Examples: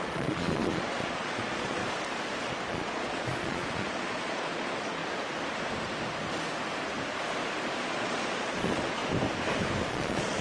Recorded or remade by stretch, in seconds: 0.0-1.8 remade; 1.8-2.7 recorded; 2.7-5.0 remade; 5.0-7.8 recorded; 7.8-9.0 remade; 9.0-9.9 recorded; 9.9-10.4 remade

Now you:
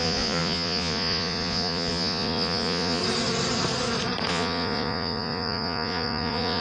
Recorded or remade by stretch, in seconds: 0.0-3.0 remade; 3.0-4.3 recorded; 4.3-6.6 remade

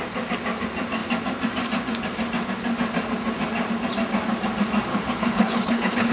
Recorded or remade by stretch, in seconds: 0.0-4.9 recorded; 4.9-6.1 remade

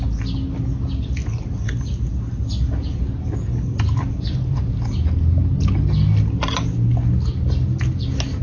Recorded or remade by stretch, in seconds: 0.0-8.4 recorded

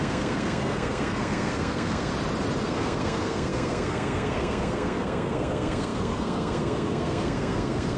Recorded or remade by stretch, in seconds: 0.0-2.1 remade; 2.1-2.6 recorded; 2.6-8.0 remade

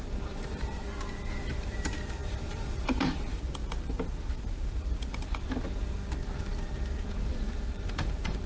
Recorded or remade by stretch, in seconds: 0.0-0.8 remade; 0.8-1.3 recorded; 1.3-3.6 remade; 3.6-4.3 recorded; 4.3-6.0 remade; 6.0-6.6 recorded; 6.6-8.5 remade